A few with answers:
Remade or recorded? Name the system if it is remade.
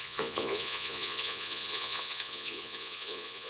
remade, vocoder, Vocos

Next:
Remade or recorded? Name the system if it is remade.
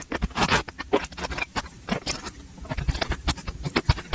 recorded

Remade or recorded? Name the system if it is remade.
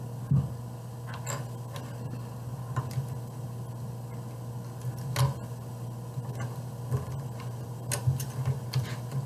recorded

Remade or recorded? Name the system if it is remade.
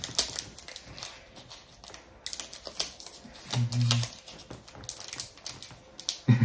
recorded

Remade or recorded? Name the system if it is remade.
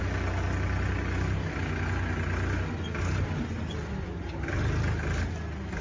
recorded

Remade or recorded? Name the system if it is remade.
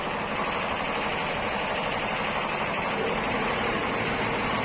recorded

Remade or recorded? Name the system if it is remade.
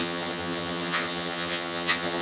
remade, vocoder, HiFi-GAN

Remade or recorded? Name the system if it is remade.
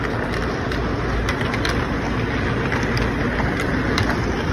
recorded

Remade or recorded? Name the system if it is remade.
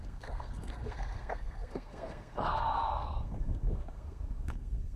remade, codec, SNAC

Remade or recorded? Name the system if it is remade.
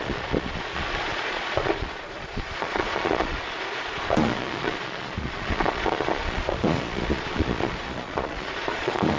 remade, vocoder, Vocos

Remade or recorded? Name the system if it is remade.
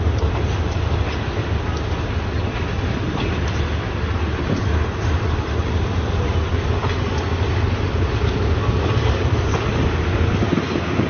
recorded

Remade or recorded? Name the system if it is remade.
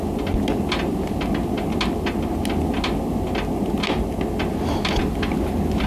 recorded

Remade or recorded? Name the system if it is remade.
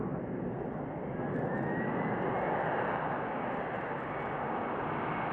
recorded